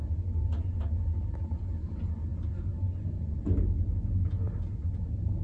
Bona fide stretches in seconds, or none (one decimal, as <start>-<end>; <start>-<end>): 0.0-5.4